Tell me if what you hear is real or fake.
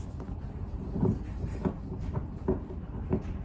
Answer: real